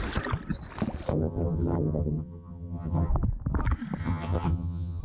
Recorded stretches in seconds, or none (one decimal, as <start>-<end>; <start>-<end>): 0.0-1.1; 3.1-4.0